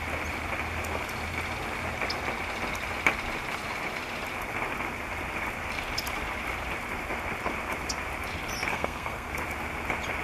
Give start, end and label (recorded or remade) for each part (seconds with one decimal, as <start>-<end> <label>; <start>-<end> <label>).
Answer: 0.0-8.7 recorded; 8.7-9.3 remade; 9.3-10.2 recorded